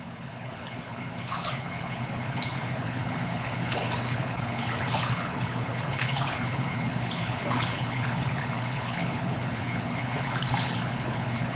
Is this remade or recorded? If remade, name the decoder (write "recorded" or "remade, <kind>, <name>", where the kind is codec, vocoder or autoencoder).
remade, codec, HILCodec